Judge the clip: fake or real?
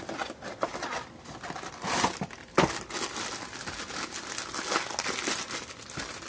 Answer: real